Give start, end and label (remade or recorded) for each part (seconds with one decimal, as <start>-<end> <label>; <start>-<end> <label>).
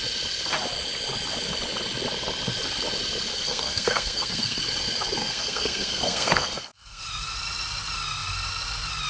0.0-3.3 recorded; 3.3-4.6 remade; 4.6-5.2 recorded; 5.2-7.0 remade; 7.0-9.1 recorded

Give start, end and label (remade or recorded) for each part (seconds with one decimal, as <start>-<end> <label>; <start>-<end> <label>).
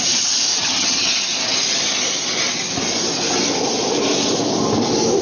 0.0-0.5 recorded; 0.5-1.1 remade; 1.1-5.2 recorded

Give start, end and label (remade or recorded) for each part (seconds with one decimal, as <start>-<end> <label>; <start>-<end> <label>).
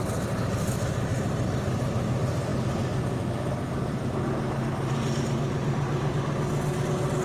0.0-7.2 recorded